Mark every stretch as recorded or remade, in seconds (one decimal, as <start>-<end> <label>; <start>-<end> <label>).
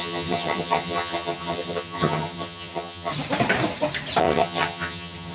0.0-3.1 remade; 3.1-4.2 recorded; 4.2-5.3 remade